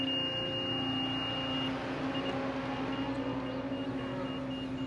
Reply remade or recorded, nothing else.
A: recorded